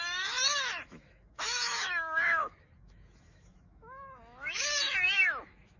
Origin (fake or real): fake